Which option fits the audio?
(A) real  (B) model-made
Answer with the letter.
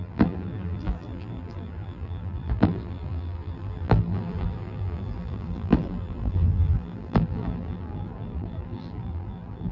B